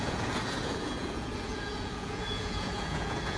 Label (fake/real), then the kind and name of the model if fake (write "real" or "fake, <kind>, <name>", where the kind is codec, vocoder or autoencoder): fake, vocoder, Vocos